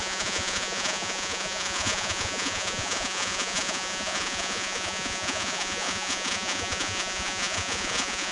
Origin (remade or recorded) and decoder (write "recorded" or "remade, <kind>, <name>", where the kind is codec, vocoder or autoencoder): remade, vocoder, Vocos